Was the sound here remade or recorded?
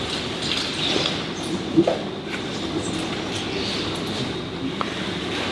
recorded